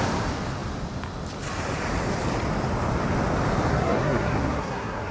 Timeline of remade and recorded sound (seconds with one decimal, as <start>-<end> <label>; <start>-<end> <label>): 0.0-3.7 recorded; 3.7-5.1 remade

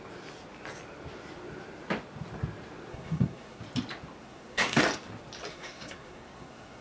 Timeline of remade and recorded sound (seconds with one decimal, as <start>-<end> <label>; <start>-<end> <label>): 0.0-2.9 recorded; 2.9-3.6 remade; 3.6-4.2 recorded; 4.2-4.8 remade; 4.8-5.5 recorded; 5.5-6.8 remade

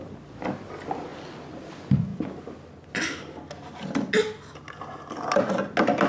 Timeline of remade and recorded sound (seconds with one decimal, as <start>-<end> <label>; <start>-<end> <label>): 0.0-6.1 recorded

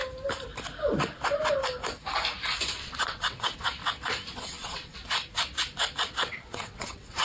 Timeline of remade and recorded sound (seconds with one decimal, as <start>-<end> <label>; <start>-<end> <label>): 0.0-2.8 recorded; 2.8-3.8 remade; 3.8-4.3 recorded; 4.3-5.0 remade; 5.0-6.1 recorded; 6.1-7.2 remade

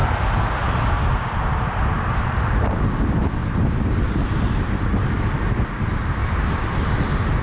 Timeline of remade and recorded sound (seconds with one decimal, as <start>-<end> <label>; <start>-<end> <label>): 0.0-3.4 recorded; 3.4-5.3 remade; 5.3-6.2 recorded; 6.2-7.4 remade